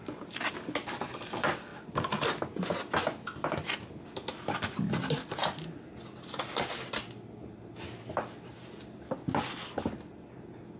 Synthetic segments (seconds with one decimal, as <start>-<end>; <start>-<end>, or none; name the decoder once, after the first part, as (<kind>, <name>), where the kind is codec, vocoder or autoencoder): none